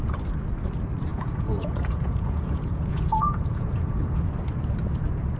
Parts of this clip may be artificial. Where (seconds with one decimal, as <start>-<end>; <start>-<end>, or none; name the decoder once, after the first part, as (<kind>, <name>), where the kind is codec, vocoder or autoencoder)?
1.1-4.3 (vocoder, Vocos)